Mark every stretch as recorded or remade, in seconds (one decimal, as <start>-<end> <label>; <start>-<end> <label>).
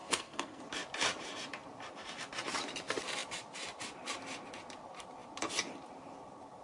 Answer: 0.0-0.6 remade; 0.6-6.6 recorded